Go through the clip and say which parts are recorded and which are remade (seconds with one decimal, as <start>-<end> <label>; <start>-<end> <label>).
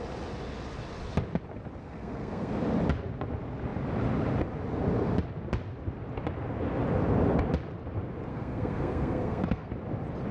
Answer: 0.0-1.8 recorded; 1.8-2.5 remade; 2.5-8.3 recorded; 8.3-9.7 remade; 9.7-10.3 recorded